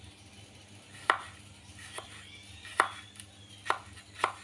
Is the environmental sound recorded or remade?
recorded